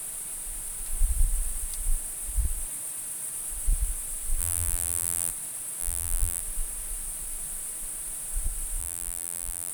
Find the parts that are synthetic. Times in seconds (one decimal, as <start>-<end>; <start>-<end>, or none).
4.4-5.3; 5.8-6.4; 8.8-9.7